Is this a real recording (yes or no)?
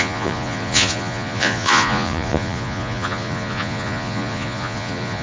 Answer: no